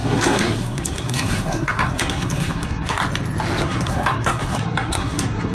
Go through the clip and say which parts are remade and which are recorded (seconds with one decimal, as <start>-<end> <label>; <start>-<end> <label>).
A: 0.0-3.0 remade; 3.0-3.6 recorded; 3.6-5.5 remade